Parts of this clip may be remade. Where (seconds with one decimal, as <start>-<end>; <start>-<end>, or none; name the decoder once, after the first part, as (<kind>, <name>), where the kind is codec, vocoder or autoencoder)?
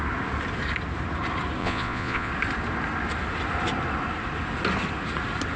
1.6-2.3 (vocoder, Vocos)